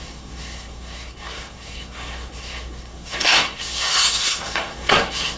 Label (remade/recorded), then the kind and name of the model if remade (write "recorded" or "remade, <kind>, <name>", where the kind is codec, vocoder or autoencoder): remade, codec, SNAC